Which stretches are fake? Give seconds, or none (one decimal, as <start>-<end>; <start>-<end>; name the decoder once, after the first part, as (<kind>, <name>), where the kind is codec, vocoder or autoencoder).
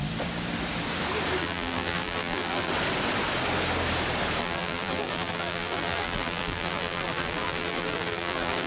1.4-2.7 (vocoder, BigVGAN v2); 4.4-8.7